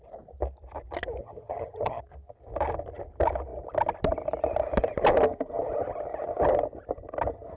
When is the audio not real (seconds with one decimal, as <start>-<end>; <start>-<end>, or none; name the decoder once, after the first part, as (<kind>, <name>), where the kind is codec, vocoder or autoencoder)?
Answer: 1.2-2.0 (vocoder, HiFi-GAN)